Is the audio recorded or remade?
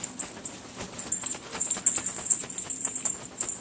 recorded